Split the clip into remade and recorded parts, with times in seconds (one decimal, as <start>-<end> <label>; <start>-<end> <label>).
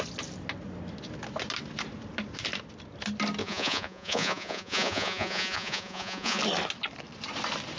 0.0-3.4 recorded; 3.4-6.4 remade; 6.4-7.8 recorded